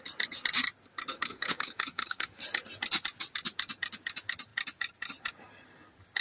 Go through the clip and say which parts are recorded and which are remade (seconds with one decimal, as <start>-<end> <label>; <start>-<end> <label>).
0.0-1.1 recorded; 1.1-2.4 remade; 2.4-6.2 recorded